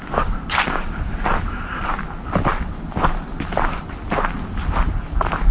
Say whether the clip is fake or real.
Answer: real